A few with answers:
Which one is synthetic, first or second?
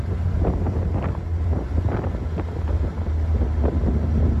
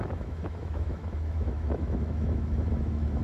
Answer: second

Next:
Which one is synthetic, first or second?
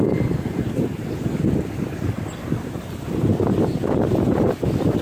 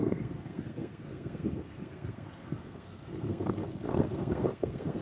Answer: second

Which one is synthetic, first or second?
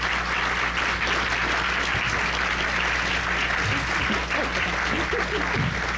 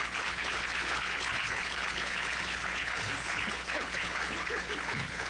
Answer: second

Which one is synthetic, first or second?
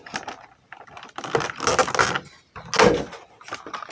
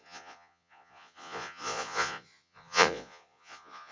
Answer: second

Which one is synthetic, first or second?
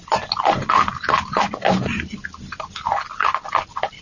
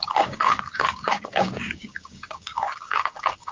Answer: second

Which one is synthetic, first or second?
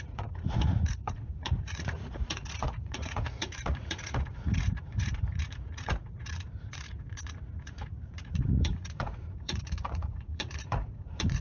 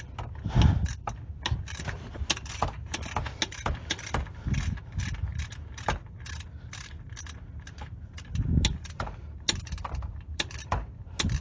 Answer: first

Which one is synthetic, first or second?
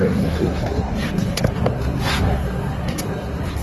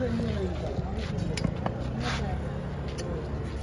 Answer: first